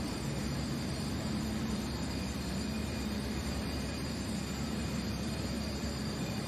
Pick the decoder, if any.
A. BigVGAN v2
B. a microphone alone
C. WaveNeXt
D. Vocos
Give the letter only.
A